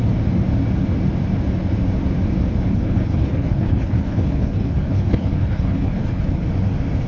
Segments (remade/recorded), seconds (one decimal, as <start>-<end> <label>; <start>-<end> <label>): 0.0-2.7 recorded; 2.7-6.5 remade; 6.5-7.1 recorded